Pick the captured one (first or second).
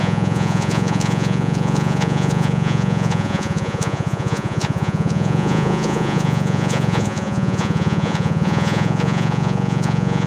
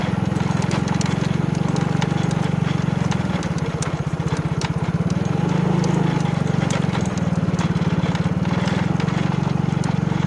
second